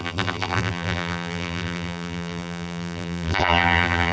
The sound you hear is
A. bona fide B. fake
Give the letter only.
B